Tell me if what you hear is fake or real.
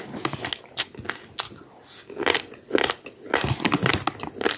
real